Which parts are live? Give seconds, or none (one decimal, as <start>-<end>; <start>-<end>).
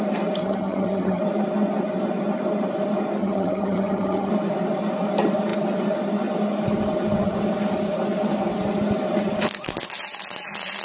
0.0-0.4; 1.2-3.2; 4.3-10.8